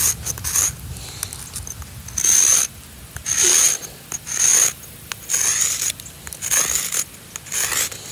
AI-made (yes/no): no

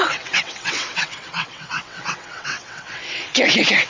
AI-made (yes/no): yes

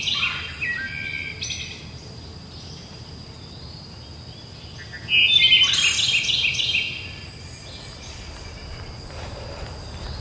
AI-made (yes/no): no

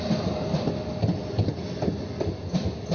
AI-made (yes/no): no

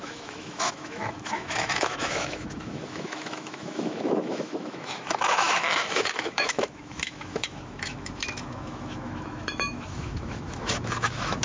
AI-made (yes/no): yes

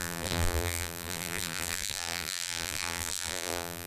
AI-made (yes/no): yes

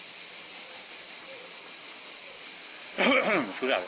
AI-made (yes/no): no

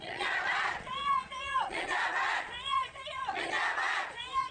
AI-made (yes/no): yes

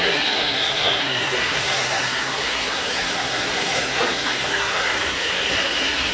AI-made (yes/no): yes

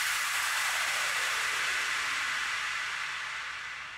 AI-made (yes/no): no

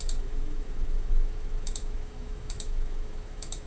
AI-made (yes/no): yes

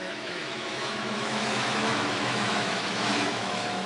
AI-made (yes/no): yes